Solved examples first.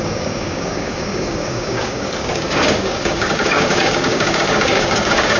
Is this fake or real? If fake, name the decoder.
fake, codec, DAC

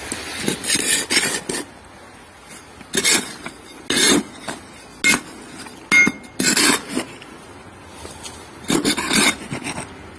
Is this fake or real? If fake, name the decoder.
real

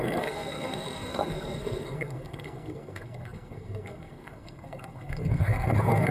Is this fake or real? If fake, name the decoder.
fake, codec, SNAC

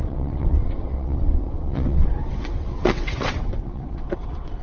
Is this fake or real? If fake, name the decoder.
fake, vocoder, WaveNeXt